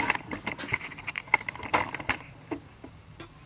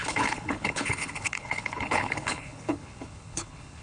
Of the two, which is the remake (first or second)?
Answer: second